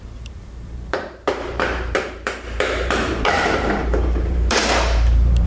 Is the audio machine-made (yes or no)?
yes